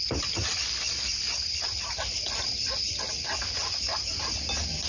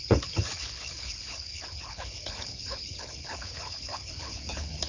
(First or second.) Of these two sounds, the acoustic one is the first